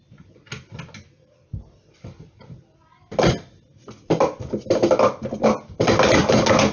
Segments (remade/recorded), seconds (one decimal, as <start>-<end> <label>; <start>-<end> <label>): 0.0-6.7 recorded